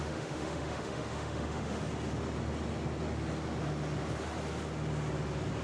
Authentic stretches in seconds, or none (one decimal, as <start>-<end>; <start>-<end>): 1.8-5.6